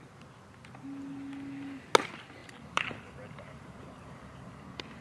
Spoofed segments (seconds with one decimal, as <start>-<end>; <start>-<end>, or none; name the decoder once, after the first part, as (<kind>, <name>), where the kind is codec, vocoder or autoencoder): 2.4-4.6 (vocoder, BigVGAN v2)